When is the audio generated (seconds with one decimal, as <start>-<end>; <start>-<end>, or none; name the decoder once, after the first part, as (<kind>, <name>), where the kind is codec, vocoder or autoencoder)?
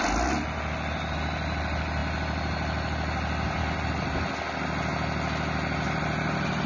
none